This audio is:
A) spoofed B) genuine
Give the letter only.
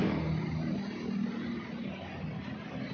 B